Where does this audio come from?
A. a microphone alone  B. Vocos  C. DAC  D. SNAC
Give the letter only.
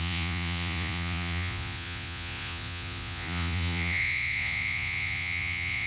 B